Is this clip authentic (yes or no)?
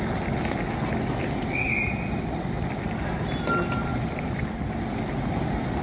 yes